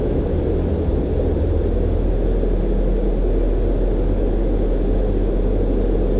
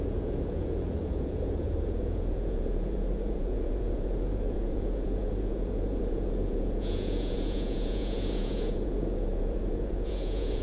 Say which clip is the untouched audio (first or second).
first